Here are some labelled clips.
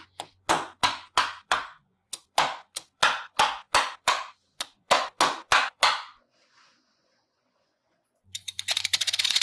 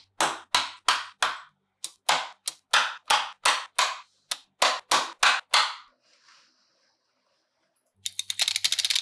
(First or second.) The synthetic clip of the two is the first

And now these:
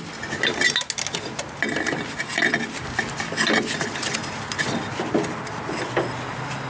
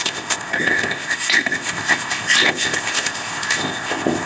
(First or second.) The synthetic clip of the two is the second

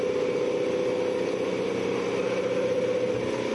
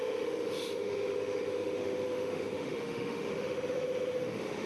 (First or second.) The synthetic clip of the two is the second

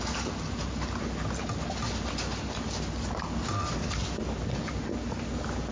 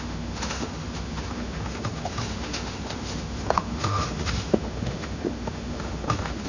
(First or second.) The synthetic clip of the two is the second